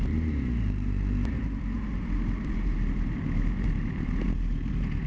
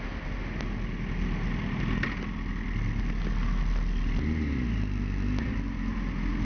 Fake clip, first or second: first